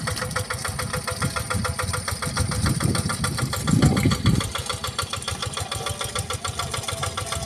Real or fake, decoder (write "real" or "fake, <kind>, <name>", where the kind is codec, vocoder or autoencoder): real